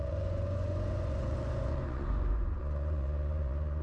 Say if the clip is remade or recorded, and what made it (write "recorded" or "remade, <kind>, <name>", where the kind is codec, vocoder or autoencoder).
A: remade, vocoder, Vocos